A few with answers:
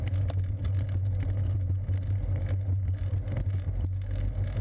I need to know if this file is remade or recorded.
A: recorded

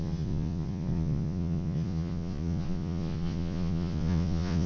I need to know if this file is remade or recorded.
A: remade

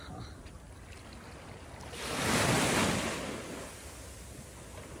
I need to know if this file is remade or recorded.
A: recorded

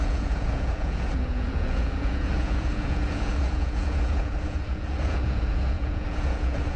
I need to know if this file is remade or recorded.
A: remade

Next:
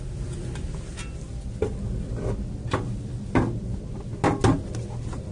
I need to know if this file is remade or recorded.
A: recorded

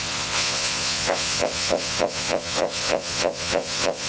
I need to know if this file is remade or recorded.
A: remade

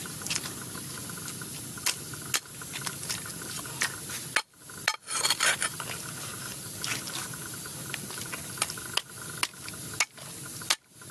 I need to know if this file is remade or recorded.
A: recorded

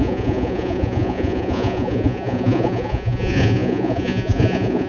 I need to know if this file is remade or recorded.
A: remade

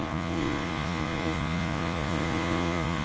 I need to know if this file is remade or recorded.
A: remade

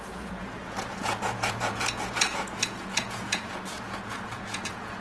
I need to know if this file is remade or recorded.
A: remade